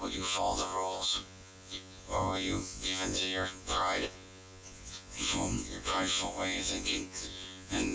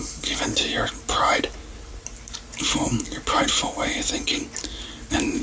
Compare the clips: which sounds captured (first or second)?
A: second